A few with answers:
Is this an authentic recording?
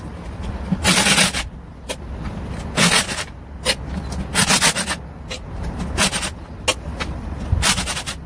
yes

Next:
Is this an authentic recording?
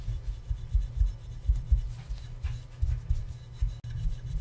yes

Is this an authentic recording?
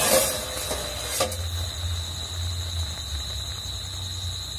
yes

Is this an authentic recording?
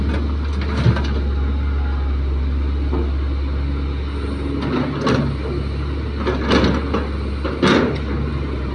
yes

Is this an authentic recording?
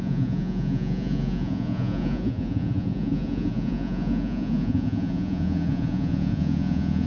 no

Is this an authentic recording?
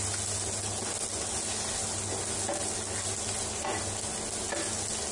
yes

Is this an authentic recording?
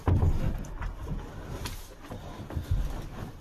yes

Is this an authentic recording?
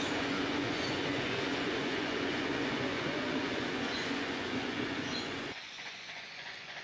no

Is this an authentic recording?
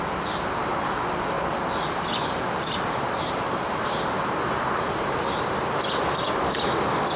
yes